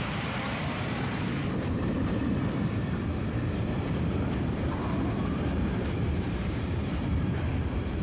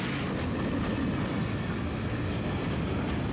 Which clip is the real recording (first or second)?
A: second